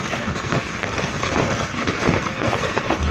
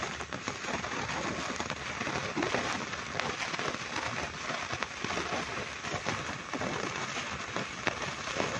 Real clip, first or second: second